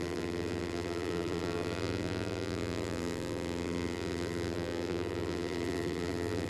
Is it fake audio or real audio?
fake